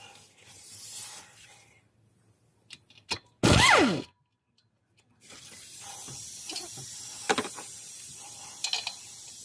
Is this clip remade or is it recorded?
recorded